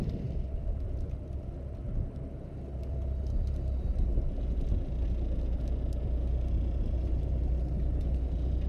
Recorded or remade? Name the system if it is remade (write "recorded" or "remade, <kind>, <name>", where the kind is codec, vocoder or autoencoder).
recorded